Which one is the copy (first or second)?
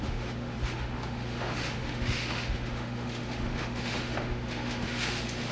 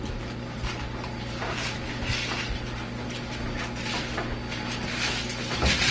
first